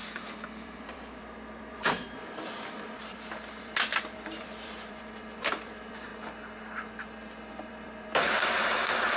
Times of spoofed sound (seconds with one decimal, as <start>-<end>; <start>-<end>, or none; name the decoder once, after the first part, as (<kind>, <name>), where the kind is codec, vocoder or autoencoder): 0.0-6.1 (vocoder, BigVGAN v2); 7.5-9.2